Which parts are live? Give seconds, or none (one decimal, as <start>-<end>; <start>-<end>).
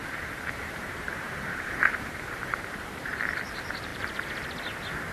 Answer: 3.1-5.1